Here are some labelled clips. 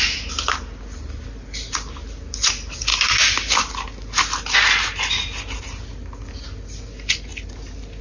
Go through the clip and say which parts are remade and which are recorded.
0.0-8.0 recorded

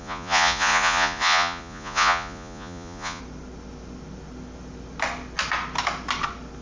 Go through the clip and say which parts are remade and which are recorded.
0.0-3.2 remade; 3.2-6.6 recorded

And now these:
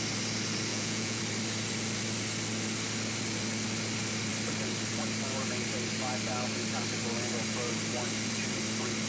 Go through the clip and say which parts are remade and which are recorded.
0.0-0.7 recorded; 0.7-1.2 remade; 1.2-9.1 recorded

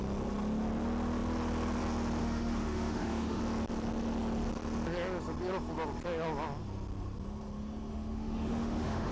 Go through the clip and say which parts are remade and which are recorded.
0.0-2.2 recorded; 2.2-3.4 remade; 3.4-7.9 recorded; 7.9-9.1 remade

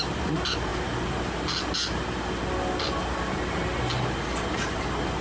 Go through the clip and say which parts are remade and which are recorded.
0.0-5.2 recorded

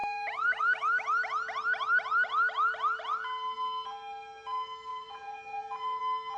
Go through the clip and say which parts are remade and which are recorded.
0.0-4.9 recorded; 4.9-6.0 remade; 6.0-6.4 recorded

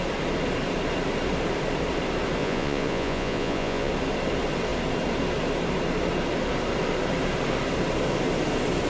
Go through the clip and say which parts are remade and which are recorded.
0.0-2.4 recorded; 2.4-3.9 remade; 3.9-8.9 recorded